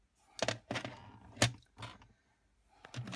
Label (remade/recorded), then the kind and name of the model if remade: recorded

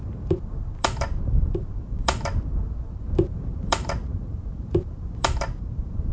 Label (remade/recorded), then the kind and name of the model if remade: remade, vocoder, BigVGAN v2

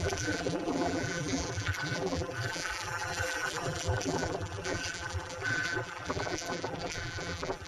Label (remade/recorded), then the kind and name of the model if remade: remade, vocoder, BigVGAN v2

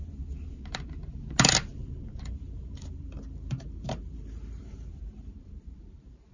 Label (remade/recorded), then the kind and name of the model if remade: remade, vocoder, BigVGAN v2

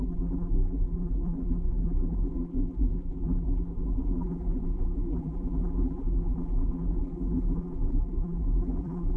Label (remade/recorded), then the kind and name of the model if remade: remade, vocoder, BigVGAN v2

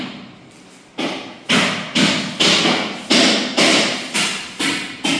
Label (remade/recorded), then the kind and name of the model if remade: recorded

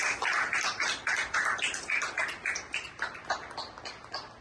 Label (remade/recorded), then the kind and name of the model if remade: recorded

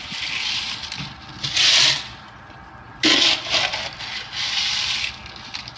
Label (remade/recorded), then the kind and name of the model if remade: recorded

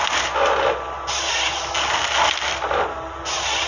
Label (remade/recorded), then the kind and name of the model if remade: recorded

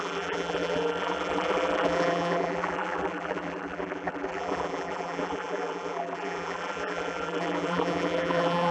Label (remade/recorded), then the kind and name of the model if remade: remade, vocoder, BigVGAN v2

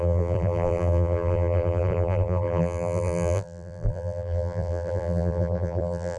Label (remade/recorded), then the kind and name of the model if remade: remade, vocoder, BigVGAN v2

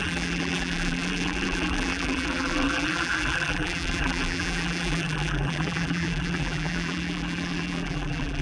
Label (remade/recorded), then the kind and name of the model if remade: remade, vocoder, BigVGAN v2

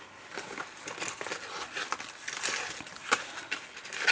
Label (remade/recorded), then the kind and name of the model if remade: recorded